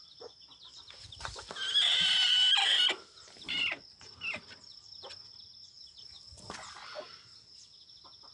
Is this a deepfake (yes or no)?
no